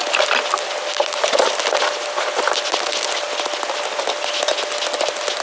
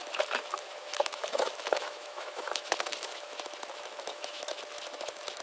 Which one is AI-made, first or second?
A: second